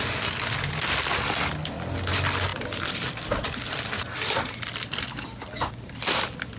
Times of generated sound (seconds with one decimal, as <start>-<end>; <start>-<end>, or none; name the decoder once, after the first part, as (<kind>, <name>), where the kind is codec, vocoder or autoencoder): 2.5-6.6 (vocoder, BigVGAN v2)